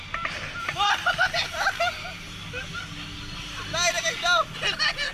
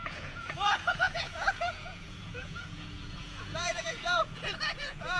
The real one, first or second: first